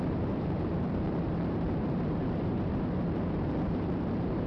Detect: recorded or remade remade